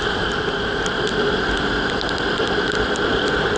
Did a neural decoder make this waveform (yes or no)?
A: no